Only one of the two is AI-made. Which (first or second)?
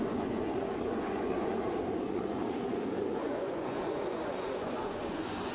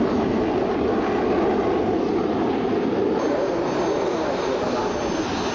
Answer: first